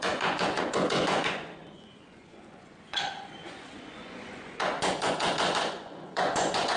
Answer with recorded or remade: remade